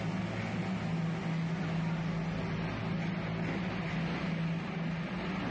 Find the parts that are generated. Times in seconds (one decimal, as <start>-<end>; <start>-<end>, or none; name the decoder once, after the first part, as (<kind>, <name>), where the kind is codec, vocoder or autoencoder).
none

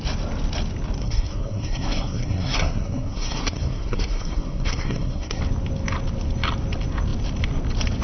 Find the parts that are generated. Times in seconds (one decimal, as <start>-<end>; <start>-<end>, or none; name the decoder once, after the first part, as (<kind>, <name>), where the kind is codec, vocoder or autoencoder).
1.0-5.4 (codec, SNAC)

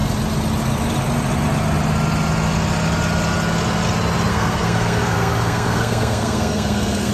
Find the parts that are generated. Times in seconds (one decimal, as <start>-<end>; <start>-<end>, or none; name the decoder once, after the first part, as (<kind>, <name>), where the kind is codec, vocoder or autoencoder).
4.3-7.1 (codec, SNAC)